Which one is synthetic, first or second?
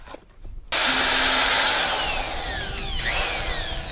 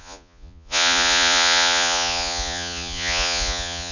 second